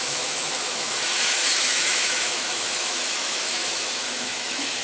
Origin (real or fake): fake